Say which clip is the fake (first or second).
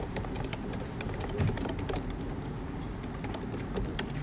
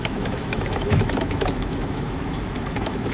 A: second